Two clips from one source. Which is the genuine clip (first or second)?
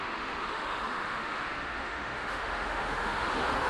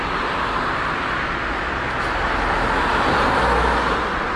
second